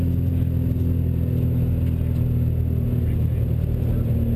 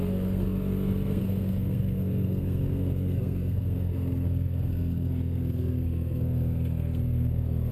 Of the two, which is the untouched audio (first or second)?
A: first